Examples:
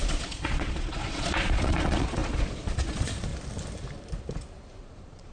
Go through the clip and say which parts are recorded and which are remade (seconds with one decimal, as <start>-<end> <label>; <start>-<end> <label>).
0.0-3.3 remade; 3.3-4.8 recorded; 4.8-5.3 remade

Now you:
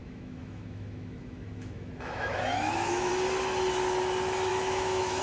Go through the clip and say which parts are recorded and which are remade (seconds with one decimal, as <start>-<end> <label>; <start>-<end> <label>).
0.0-3.1 remade; 3.1-4.5 recorded; 4.5-5.2 remade

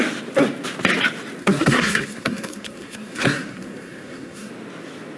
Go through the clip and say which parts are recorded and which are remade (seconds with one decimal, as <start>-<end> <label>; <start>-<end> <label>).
0.0-1.4 recorded; 1.4-4.5 remade; 4.5-5.2 recorded